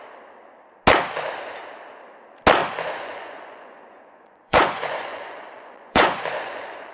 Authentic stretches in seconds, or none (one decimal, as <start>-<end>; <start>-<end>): 0.0-2.6